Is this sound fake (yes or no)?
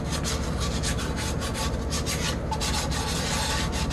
no